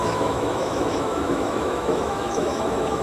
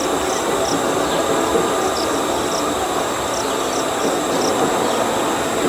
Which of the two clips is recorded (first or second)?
second